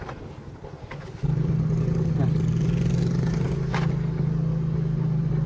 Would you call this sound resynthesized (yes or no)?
no